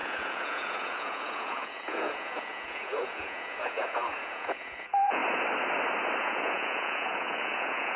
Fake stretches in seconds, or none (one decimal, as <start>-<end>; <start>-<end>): 0.0-5.2; 6.2-8.0